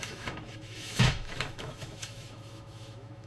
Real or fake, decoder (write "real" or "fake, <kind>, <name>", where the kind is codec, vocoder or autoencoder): fake, autoencoder, DAC-VAE